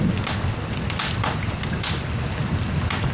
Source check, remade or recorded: recorded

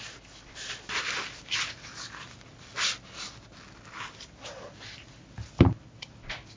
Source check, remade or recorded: recorded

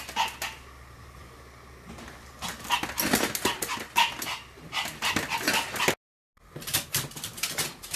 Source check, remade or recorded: recorded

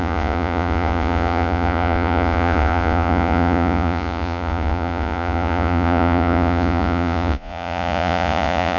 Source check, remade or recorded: remade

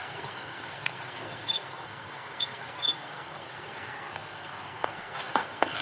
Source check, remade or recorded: remade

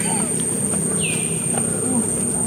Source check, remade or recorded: recorded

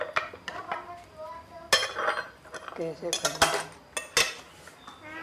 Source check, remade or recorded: recorded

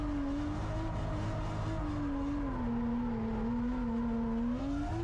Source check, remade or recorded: recorded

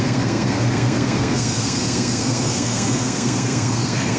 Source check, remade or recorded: remade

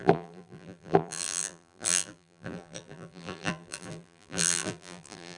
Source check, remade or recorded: remade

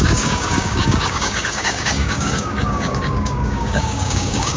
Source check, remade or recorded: remade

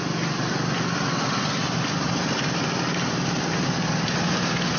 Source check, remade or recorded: recorded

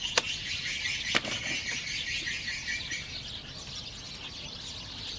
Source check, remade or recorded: recorded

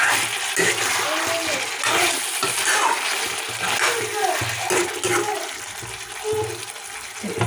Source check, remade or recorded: recorded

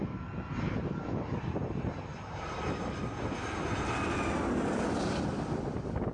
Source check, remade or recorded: recorded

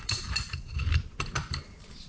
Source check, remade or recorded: remade